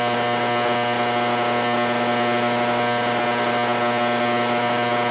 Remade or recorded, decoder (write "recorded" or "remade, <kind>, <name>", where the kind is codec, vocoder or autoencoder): recorded